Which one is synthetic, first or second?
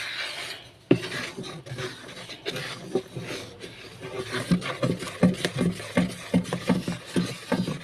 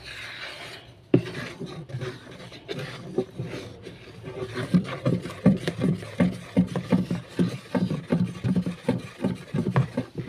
second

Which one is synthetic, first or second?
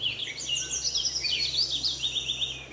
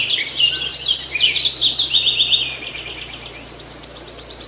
second